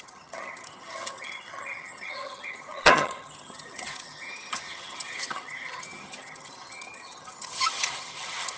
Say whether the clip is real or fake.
fake